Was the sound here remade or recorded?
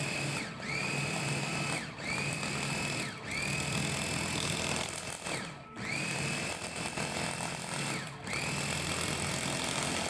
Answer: recorded